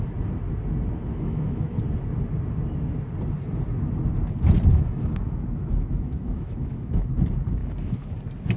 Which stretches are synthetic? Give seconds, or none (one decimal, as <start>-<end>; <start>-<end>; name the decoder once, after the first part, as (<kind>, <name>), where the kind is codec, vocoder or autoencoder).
1.1-1.8 (autoencoder, DAC-VAE); 4.7-7.1; 7.6-8.1